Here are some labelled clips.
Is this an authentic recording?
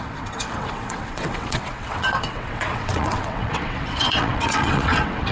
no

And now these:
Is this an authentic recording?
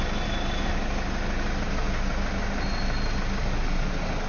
yes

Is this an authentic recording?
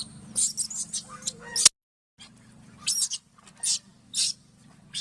yes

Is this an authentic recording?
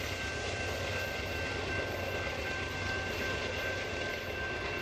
yes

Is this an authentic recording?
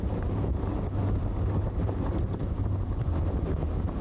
yes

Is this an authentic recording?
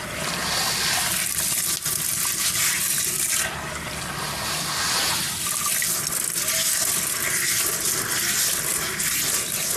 yes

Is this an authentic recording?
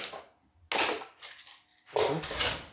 yes